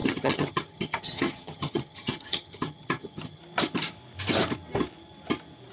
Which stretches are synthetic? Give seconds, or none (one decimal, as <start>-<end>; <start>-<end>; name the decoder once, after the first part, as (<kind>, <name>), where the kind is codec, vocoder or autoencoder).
0.0-3.4 (vocoder, HiFi-GAN)